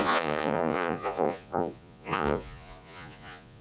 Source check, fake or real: fake